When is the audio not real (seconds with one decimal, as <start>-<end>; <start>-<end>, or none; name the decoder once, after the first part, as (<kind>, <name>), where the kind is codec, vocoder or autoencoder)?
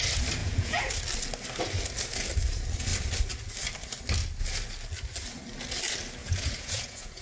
0.4-0.9 (vocoder, Vocos); 6.2-7.2